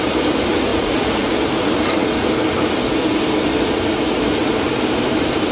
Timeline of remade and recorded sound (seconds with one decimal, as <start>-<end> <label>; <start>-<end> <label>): 0.0-0.7 recorded; 0.7-1.3 remade; 1.3-5.5 recorded